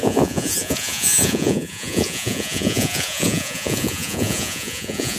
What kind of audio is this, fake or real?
fake